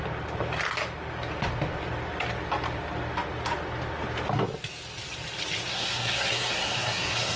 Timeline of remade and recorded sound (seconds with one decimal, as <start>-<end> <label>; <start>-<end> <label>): 0.0-5.7 recorded; 5.7-7.4 remade